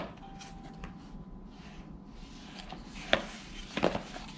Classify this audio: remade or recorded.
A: recorded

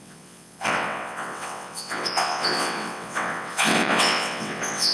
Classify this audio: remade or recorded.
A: remade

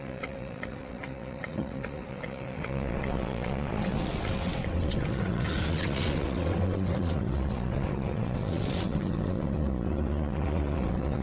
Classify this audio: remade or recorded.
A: remade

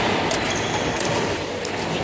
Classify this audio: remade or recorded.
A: recorded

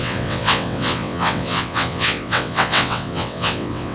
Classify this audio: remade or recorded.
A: remade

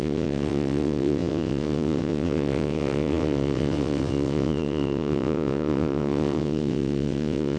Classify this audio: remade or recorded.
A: remade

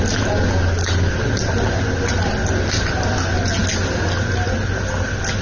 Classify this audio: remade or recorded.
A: recorded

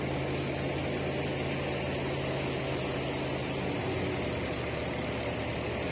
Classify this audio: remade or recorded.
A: recorded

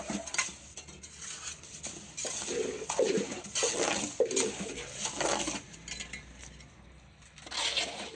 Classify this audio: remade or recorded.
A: recorded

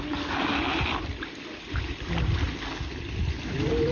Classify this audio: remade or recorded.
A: recorded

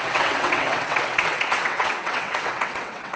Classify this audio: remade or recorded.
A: remade